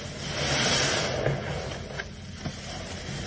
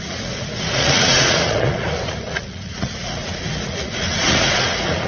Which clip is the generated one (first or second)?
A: second